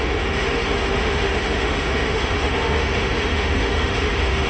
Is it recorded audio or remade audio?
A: remade